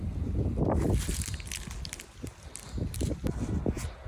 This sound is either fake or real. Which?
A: real